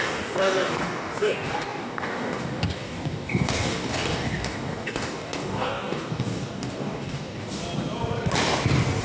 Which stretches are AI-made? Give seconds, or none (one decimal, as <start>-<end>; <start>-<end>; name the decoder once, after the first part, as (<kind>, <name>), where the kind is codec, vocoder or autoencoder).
0.0-7.6 (codec, DAC)